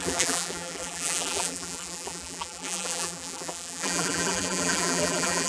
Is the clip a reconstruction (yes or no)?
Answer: yes